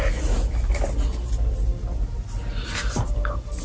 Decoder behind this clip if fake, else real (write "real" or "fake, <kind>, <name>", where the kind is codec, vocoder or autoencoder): real